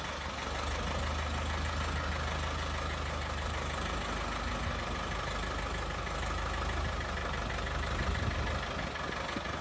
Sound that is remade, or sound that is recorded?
recorded